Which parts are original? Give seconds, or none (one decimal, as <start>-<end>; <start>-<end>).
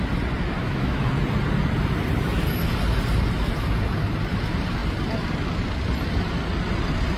0.0-0.6; 1.1-7.2